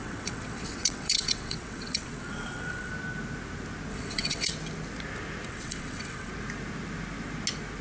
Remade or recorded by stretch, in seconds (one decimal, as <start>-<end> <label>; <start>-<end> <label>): 0.0-2.9 remade; 2.9-3.9 recorded; 3.9-4.5 remade; 4.5-5.5 recorded; 5.5-6.3 remade; 6.3-7.8 recorded